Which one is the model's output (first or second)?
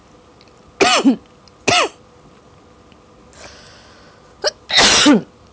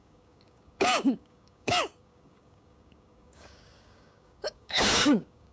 second